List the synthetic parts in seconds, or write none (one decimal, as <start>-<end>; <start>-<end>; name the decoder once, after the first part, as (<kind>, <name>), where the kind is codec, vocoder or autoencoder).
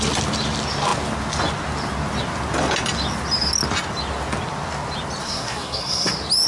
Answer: 5.2-6.1 (codec, SNAC)